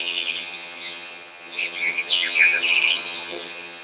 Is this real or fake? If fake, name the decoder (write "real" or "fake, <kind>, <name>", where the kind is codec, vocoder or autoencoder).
fake, vocoder, HiFi-GAN